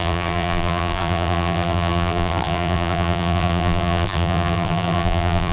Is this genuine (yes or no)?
no